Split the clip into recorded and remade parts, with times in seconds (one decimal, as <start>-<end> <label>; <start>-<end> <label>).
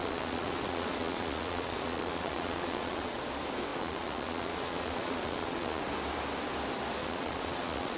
0.0-3.2 remade; 3.2-3.7 recorded; 3.7-5.8 remade; 5.8-7.0 recorded; 7.0-8.0 remade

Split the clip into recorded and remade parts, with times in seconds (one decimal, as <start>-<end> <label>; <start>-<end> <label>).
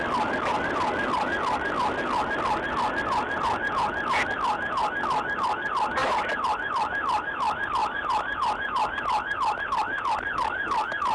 0.0-11.1 recorded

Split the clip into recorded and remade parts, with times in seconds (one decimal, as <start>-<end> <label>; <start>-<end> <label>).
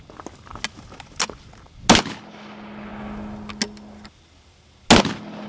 0.0-5.5 recorded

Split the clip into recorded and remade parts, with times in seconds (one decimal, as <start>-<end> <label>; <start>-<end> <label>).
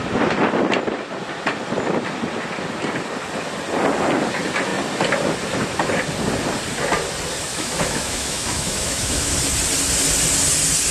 0.0-7.5 recorded; 7.5-9.3 remade; 9.3-10.9 recorded